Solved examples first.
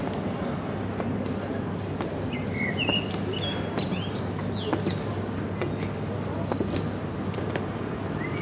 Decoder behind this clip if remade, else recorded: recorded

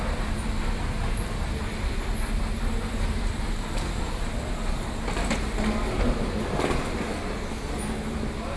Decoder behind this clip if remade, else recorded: recorded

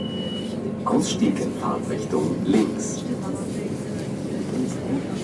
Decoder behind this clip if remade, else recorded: recorded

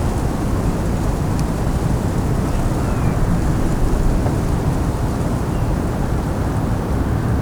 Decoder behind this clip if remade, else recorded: recorded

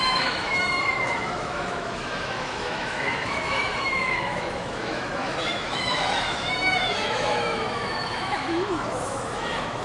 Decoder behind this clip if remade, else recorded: remade, autoencoder, DAC-VAE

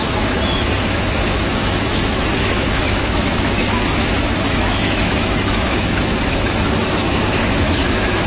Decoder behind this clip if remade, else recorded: remade, autoencoder, DAC-VAE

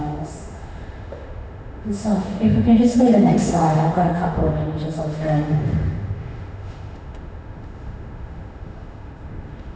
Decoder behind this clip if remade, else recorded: remade, autoencoder, DAC-VAE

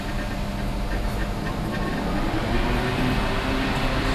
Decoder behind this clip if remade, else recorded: recorded